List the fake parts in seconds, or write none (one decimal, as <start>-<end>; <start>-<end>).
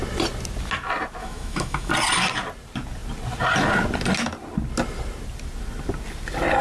1.2-1.9